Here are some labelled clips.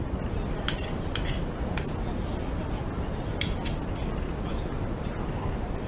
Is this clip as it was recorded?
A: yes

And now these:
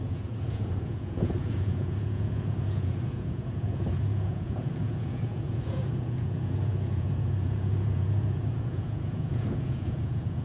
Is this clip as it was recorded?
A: no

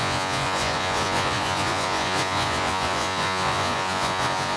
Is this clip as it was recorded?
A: no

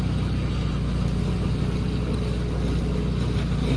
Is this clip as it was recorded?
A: yes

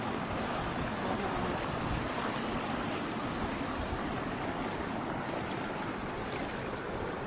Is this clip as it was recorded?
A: yes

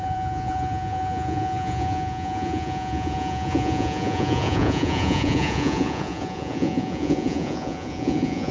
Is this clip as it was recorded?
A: no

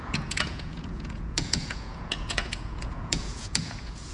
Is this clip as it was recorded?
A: no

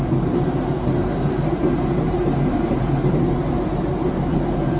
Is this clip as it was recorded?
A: yes